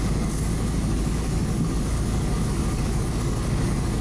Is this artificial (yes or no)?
yes